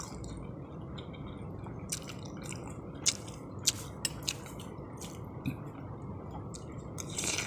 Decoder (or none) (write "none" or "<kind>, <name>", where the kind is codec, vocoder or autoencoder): none